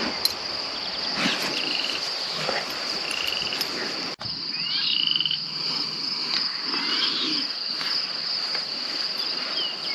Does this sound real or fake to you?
real